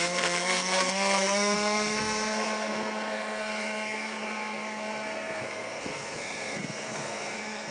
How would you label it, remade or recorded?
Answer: remade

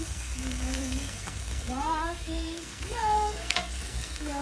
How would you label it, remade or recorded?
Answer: remade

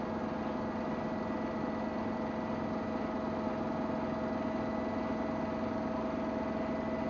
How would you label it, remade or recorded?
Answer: recorded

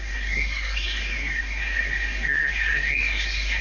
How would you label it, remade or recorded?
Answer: remade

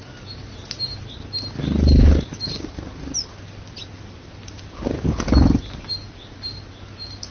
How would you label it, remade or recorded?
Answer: recorded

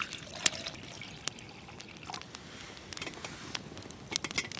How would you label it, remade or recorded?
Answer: recorded